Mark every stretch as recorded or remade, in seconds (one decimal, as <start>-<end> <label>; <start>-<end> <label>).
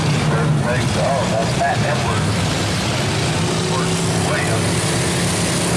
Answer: 0.0-5.8 recorded